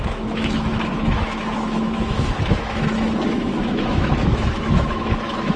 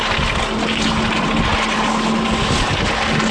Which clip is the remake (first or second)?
first